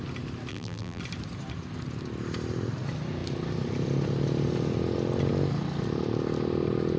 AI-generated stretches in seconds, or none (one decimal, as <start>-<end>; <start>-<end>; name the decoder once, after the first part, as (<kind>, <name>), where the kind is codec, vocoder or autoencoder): 0.5-1.0 (vocoder, BigVGAN v2)